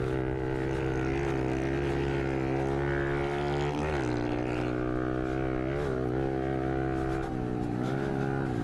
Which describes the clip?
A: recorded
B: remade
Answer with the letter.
A